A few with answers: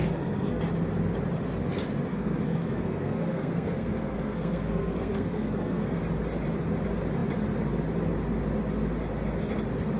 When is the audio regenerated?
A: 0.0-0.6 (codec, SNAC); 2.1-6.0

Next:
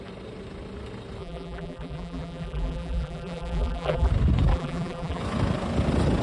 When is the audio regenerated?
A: 1.2-4.1 (vocoder, BigVGAN v2); 4.5-5.2

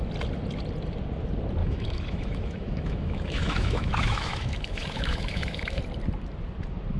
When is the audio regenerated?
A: 1.6-5.8 (autoencoder, DAC-VAE)